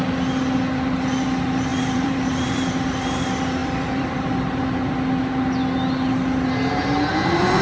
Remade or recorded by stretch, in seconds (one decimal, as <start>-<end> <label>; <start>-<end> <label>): 0.0-1.7 recorded; 1.7-2.7 remade; 2.7-3.6 recorded; 3.6-4.9 remade; 4.9-7.6 recorded

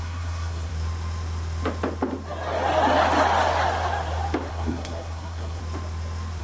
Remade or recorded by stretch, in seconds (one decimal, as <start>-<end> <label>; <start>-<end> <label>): 0.0-0.7 remade; 0.7-4.5 recorded; 4.5-5.6 remade; 5.6-6.4 recorded